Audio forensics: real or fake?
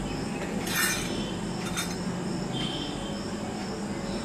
real